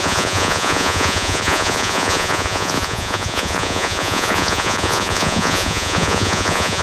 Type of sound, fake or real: fake